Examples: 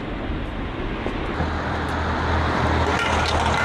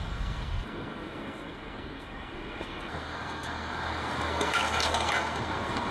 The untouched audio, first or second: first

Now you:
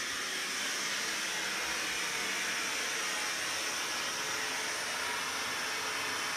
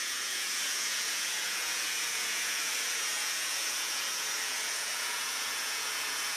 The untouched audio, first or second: first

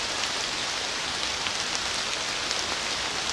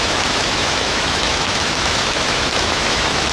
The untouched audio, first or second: first